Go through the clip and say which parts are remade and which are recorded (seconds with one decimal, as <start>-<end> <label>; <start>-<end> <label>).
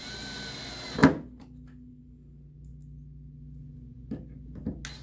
0.0-5.0 recorded